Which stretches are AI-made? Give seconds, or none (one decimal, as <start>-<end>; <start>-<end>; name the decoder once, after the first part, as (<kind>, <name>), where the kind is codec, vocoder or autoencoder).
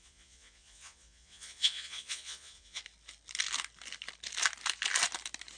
0.0-2.8 (vocoder, Vocos)